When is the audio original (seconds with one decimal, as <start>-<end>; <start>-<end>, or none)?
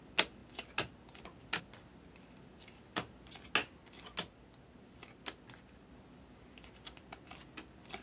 0.0-8.0